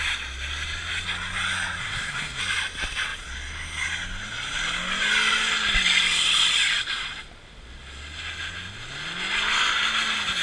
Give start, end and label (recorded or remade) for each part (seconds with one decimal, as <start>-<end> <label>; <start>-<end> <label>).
0.0-1.8 recorded; 1.8-2.4 remade; 2.4-10.4 recorded